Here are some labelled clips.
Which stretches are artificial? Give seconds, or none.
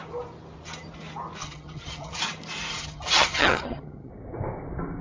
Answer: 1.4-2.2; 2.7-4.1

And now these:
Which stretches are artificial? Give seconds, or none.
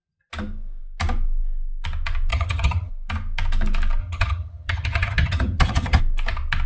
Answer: 2.3-2.9; 4.0-6.0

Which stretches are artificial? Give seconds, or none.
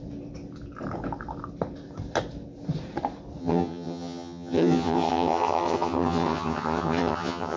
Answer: 3.4-7.6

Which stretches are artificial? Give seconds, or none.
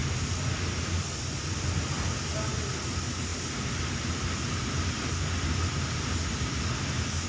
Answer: none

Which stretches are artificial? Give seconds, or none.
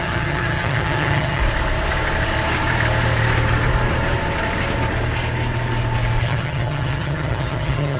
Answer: 0.0-1.4; 6.2-8.0